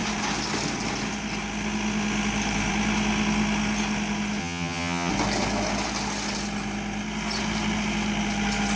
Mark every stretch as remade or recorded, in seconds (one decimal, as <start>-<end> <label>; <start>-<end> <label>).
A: 0.0-4.4 recorded; 4.4-5.1 remade; 5.1-8.8 recorded